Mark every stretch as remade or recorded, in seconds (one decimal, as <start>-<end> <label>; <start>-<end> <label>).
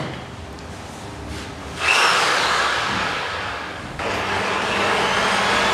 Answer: 0.0-1.6 recorded; 1.6-5.0 remade; 5.0-5.7 recorded